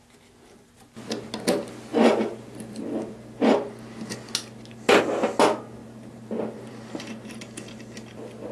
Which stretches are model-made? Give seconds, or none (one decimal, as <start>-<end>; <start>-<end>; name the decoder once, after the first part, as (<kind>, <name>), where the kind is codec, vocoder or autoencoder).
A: 5.8-6.7 (vocoder, BigVGAN v2)